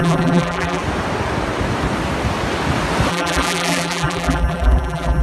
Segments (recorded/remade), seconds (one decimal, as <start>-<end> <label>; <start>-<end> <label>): 0.0-0.8 remade; 0.8-3.1 recorded; 3.1-5.2 remade